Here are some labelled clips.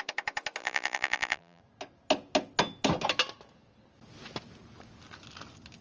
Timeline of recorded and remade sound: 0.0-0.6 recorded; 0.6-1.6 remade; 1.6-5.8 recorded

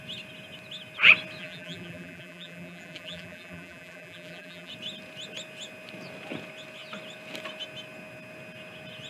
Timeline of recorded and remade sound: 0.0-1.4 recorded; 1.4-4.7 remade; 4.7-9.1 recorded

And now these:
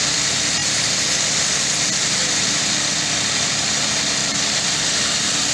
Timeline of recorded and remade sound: 0.0-4.2 recorded; 4.2-5.5 remade

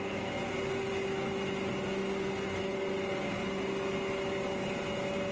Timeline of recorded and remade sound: 0.0-5.3 recorded